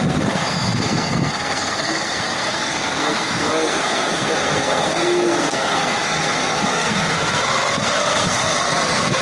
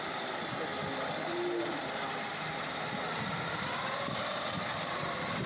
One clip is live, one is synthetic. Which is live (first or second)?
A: second